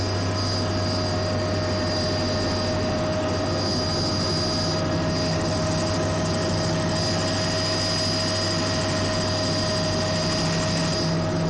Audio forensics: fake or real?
real